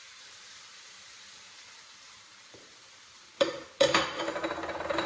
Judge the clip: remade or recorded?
remade